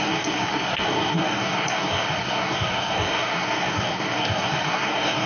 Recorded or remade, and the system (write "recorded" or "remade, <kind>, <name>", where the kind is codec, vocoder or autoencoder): remade, codec, SNAC